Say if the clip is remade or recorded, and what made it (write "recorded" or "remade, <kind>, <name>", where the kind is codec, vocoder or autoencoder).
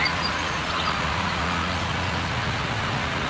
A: remade, vocoder, Vocos